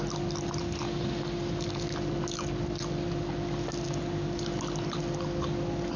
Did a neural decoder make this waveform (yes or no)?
no